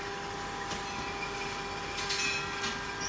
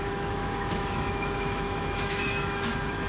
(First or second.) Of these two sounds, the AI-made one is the second